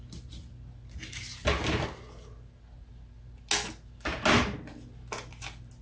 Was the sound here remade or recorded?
recorded